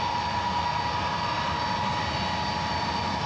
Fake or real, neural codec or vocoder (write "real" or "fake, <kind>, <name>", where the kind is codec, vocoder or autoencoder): real